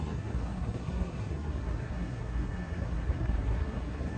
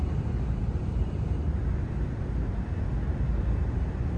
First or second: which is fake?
first